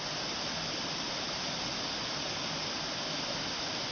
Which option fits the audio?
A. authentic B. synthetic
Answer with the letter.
A